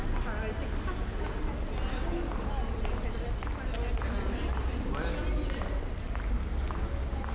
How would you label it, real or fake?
real